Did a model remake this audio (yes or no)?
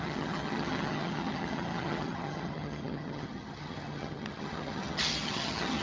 yes